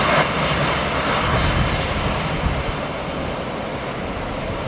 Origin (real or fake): real